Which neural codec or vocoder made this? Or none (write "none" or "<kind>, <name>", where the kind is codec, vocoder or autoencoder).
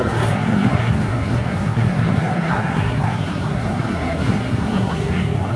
codec, SNAC